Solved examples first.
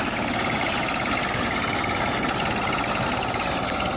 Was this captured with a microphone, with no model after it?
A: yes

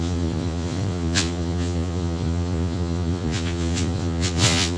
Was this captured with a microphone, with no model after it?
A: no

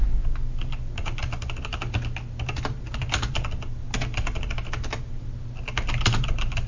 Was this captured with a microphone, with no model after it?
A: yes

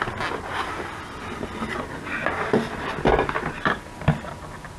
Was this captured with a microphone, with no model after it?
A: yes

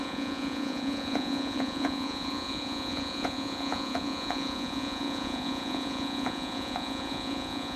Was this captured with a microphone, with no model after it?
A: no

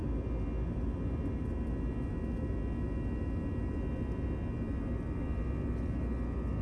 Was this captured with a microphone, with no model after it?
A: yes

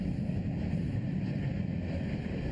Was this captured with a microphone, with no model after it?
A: yes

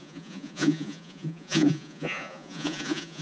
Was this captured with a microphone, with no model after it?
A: no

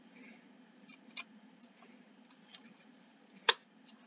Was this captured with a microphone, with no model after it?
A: yes